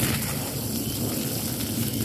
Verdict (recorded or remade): recorded